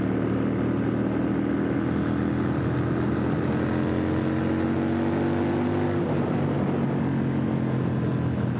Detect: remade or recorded recorded